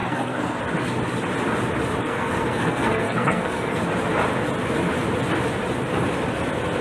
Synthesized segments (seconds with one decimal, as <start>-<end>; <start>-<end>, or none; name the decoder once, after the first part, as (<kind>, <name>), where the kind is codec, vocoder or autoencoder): 0.0-0.6 (codec, SNAC); 2.0-3.8